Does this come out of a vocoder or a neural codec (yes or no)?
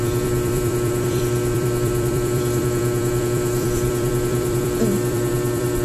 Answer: yes